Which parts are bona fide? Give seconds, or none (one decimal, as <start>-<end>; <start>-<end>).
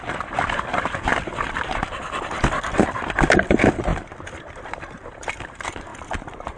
5.9-6.6